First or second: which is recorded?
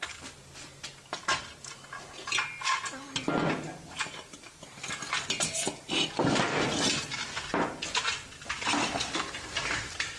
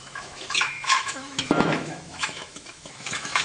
first